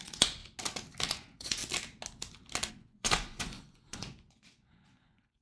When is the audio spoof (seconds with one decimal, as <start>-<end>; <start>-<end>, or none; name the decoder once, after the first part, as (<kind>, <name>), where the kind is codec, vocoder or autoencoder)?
0.0-0.4 (vocoder, Vocos); 1.1-1.6; 2.7-5.4

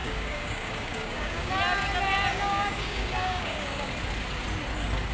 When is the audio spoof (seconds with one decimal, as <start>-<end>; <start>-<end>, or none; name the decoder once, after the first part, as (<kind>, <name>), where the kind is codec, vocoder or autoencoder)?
0.0-1.5 (codec, DAC); 2.3-3.9

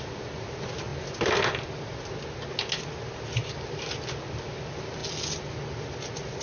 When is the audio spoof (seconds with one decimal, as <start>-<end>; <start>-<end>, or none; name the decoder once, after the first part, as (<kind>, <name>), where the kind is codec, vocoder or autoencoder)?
none

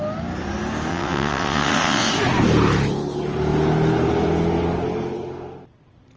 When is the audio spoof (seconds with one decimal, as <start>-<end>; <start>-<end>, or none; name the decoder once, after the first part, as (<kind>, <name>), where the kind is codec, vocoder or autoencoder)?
0.9-2.1 (vocoder, WaveNeXt)

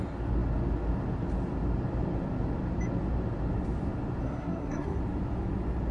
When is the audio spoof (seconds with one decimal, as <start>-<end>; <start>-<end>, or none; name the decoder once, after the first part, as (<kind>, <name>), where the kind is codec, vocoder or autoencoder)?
4.2-5.0 (codec, SNAC)

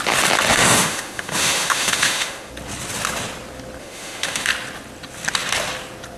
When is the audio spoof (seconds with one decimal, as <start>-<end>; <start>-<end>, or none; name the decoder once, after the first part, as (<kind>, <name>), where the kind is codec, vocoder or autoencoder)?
0.5-2.5 (autoencoder, DAC-VAE); 3.8-4.5

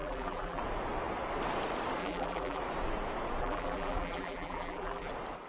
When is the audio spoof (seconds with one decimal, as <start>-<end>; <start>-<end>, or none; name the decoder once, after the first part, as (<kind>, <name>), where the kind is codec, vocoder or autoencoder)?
0.0-0.6 (vocoder, BigVGAN v2); 2.0-2.6; 3.4-5.1